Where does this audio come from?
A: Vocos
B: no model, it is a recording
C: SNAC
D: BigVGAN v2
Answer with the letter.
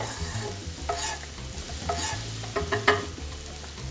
B